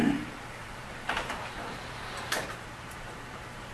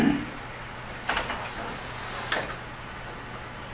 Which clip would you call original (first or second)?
second